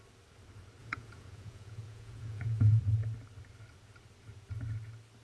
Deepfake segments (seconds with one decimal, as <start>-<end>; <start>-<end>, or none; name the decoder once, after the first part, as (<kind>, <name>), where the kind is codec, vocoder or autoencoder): 0.8-2.8 (vocoder, Vocos)